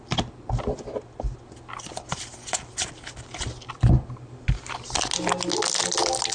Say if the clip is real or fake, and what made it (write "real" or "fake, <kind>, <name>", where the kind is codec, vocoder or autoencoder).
real